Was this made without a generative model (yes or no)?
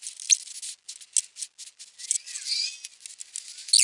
yes